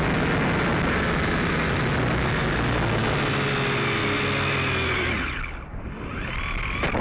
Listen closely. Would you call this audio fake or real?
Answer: real